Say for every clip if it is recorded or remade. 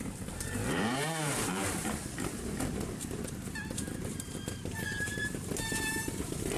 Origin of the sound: remade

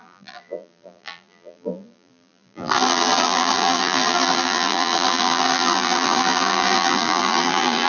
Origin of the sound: remade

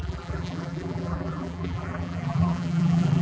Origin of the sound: remade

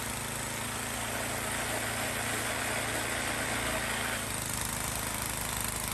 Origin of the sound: recorded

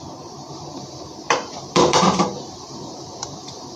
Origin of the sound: remade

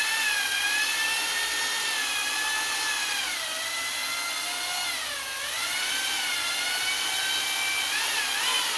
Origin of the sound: recorded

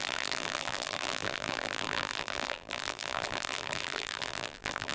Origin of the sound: remade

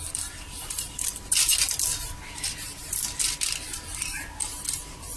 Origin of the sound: remade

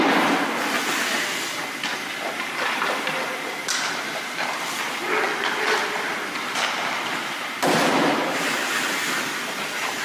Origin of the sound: remade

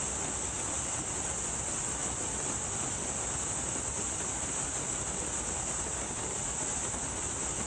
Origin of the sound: recorded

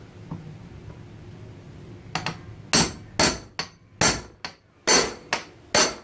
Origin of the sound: recorded